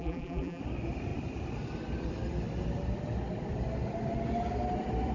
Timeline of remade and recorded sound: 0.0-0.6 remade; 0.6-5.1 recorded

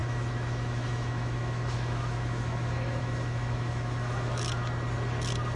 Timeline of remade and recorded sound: 0.0-4.6 remade; 4.6-5.6 recorded

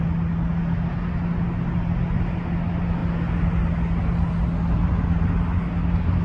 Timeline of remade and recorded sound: 0.0-6.2 recorded

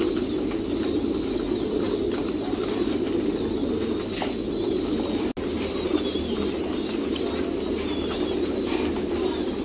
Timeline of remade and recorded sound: 0.0-9.6 recorded